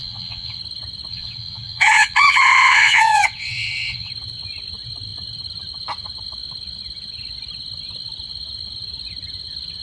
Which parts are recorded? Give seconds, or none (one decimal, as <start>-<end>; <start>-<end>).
0.6-1.1; 4.1-9.8